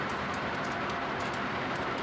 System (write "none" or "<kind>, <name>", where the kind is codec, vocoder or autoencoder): vocoder, BigVGAN v2